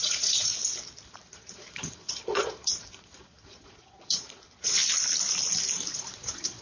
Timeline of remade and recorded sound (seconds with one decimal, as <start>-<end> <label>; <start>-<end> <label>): 0.0-0.5 remade; 0.5-1.2 recorded; 1.2-4.8 remade; 4.8-5.9 recorded; 5.9-6.6 remade

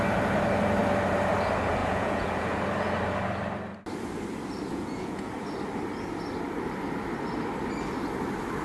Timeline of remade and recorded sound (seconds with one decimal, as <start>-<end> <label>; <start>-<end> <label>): 0.0-1.8 recorded; 1.8-2.6 remade; 2.6-4.7 recorded; 4.7-5.3 remade; 5.3-8.6 recorded

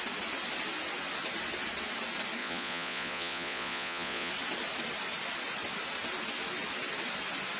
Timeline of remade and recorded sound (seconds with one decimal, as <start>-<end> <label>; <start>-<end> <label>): 0.0-2.4 recorded; 2.4-4.3 remade; 4.3-7.6 recorded

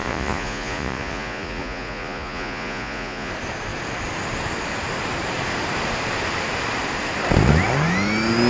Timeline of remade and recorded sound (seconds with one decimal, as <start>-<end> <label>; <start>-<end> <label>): 0.0-3.3 remade; 3.3-8.5 recorded

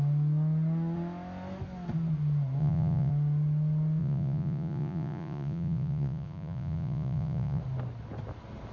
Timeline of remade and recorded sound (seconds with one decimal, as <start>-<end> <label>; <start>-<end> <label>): 0.0-2.6 recorded; 2.6-3.1 remade; 3.1-4.0 recorded; 4.0-7.6 remade; 7.6-8.7 recorded

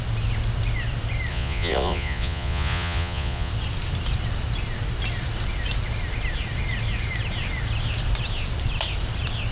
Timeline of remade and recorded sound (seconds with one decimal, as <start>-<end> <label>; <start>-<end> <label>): 0.0-1.3 recorded; 1.3-3.5 remade; 3.5-9.5 recorded